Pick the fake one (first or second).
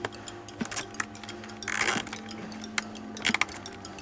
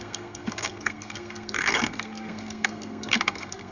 second